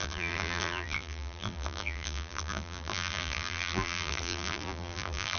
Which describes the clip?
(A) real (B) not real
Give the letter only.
B